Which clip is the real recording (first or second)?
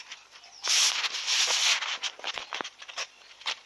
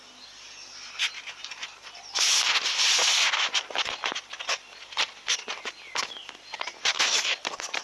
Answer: second